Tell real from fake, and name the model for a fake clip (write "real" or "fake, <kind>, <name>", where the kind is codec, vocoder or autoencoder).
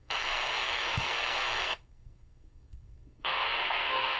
fake, codec, SNAC